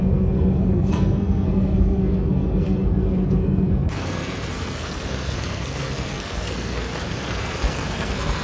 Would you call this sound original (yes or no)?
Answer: no